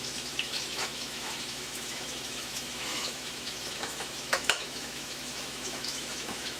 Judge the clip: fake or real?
fake